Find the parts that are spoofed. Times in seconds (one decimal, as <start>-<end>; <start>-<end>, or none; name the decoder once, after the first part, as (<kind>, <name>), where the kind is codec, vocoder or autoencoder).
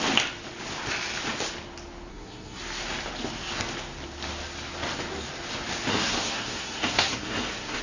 2.1-2.6 (codec, SNAC); 5.9-7.8